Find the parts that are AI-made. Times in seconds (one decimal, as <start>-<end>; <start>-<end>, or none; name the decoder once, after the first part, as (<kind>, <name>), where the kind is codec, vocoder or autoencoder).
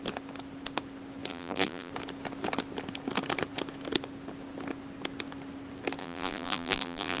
1.3-1.9 (vocoder, BigVGAN v2); 6.0-7.2